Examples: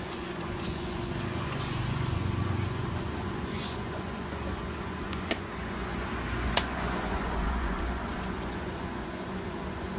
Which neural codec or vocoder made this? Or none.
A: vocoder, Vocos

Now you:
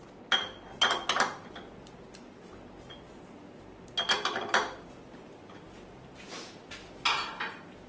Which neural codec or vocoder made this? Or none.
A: none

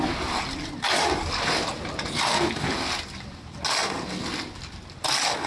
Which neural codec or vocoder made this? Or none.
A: none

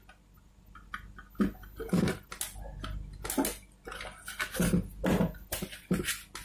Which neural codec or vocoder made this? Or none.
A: none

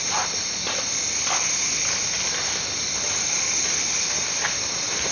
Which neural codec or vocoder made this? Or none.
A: none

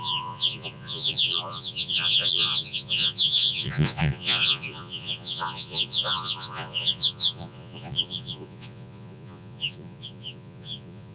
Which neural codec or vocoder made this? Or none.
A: vocoder, Vocos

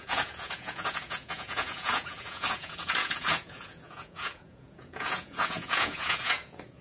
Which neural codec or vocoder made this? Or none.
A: vocoder, Vocos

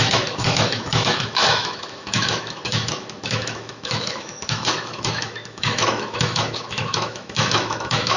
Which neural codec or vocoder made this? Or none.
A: autoencoder, DAC-VAE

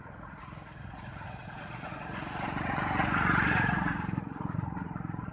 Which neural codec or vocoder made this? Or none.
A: vocoder, Vocos